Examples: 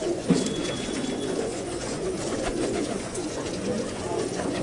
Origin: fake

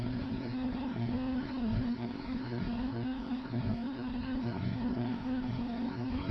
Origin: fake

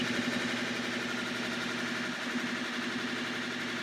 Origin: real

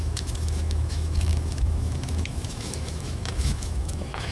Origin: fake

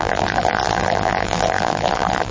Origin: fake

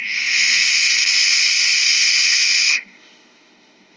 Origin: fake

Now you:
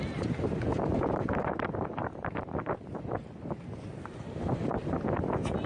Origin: fake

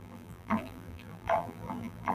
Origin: fake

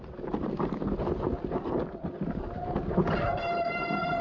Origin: real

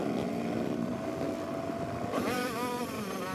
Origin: real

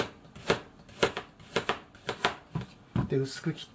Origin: real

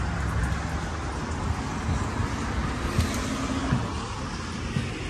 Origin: real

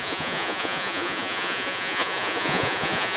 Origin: fake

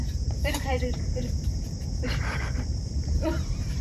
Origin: fake